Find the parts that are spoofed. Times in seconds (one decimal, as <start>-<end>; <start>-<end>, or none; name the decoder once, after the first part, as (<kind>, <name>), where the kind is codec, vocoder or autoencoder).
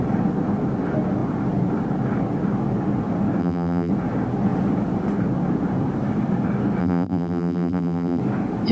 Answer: 3.4-3.9 (vocoder, BigVGAN v2); 6.8-8.2